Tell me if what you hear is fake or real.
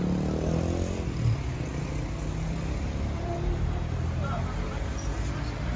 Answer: real